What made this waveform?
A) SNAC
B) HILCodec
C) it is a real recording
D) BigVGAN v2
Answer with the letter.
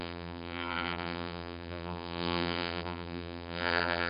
D